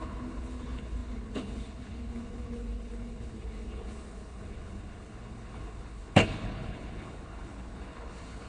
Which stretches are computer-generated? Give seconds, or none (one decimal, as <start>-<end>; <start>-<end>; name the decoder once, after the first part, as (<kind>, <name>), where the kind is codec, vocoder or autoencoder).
0.0-8.5 (codec, HILCodec)